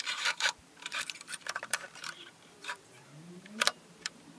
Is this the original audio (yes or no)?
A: no